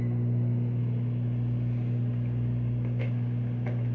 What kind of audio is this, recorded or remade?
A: recorded